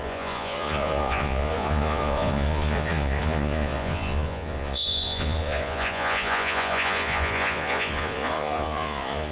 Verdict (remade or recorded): remade